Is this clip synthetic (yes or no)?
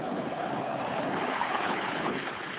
yes